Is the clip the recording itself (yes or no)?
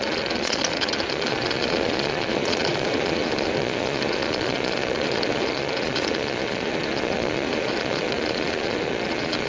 no